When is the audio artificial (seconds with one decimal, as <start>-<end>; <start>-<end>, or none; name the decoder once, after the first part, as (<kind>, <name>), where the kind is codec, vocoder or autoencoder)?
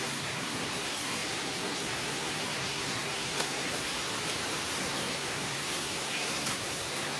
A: 0.0-4.1 (codec, SNAC); 4.8-7.2